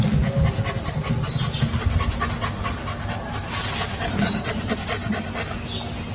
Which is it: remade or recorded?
recorded